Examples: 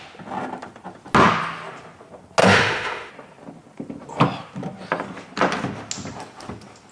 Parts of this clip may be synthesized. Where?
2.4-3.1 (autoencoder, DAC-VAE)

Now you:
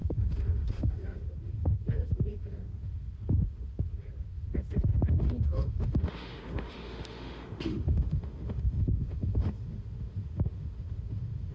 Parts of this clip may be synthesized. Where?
0.0-11.5 (autoencoder, DAC-VAE)

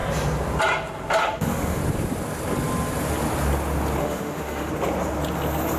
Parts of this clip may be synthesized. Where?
1.2-1.8 (autoencoder, DAC-VAE); 4.0-4.7

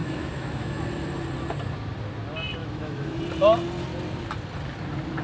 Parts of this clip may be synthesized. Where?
0.0-0.8 (autoencoder, DAC-VAE); 2.6-3.2

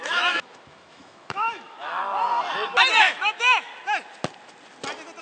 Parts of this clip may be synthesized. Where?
0.0-2.0 (autoencoder, DAC-VAE); 3.0-3.7